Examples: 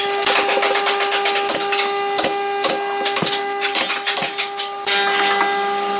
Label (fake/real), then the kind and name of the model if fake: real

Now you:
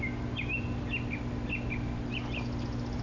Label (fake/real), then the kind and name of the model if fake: real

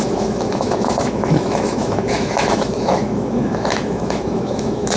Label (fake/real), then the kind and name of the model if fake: fake, autoencoder, DAC-VAE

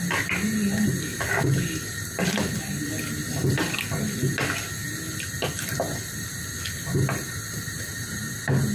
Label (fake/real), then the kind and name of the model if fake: real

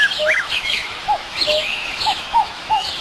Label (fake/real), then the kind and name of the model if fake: fake, autoencoder, DAC-VAE